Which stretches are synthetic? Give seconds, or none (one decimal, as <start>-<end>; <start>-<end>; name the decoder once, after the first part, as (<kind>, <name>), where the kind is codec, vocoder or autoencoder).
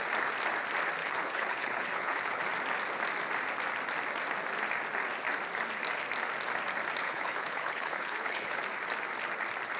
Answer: 1.0-2.4 (codec, HILCodec); 7.0-8.6